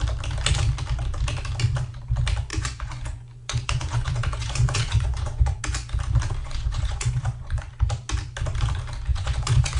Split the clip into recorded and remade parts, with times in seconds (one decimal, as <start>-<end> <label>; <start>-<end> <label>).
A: 0.0-2.5 recorded; 2.5-5.6 remade; 5.6-6.4 recorded; 6.4-7.7 remade; 7.7-9.1 recorded; 9.1-9.8 remade